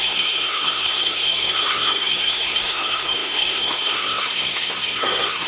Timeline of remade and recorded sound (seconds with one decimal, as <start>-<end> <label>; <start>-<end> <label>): 0.0-5.5 remade